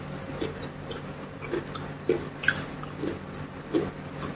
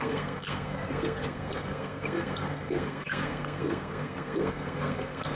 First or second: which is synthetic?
second